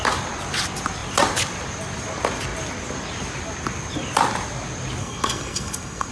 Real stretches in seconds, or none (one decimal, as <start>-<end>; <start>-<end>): 0.0-5.0